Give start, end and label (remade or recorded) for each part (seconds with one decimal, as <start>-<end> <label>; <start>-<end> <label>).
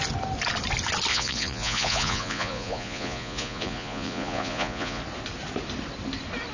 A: 0.0-1.1 recorded; 1.1-5.0 remade; 5.0-6.5 recorded